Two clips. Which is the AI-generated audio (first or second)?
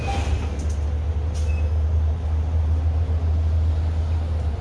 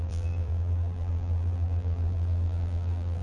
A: second